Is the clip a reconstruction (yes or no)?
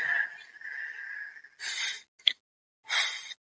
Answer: no